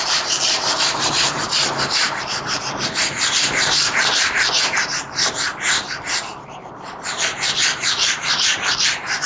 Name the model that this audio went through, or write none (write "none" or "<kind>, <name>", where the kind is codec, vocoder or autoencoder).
vocoder, BigVGAN v2